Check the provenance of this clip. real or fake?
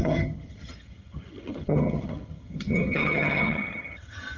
fake